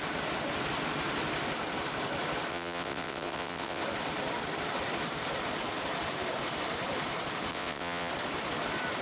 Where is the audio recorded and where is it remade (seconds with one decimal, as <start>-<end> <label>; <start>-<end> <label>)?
0.0-2.5 recorded; 2.5-3.8 remade; 3.8-7.5 recorded; 7.5-8.1 remade; 8.1-9.0 recorded